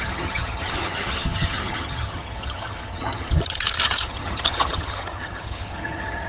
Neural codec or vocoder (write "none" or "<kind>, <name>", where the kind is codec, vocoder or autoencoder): vocoder, HiFi-GAN